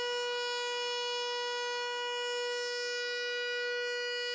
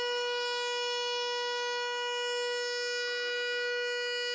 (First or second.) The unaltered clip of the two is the first